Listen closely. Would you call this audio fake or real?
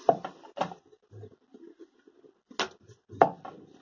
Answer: real